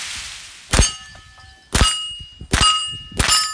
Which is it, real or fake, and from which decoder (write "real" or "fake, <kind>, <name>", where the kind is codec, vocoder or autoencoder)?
real